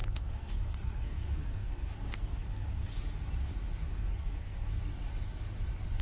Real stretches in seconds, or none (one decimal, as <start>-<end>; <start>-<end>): 2.9-3.9; 4.7-6.0